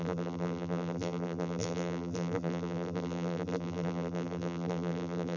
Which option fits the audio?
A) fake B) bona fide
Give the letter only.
A